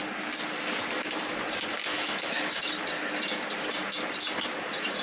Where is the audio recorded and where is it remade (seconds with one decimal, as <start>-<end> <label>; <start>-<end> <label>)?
0.0-1.9 recorded; 1.9-2.7 remade; 2.7-5.0 recorded